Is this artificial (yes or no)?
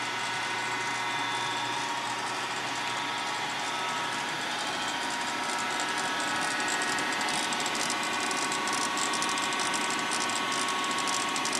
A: no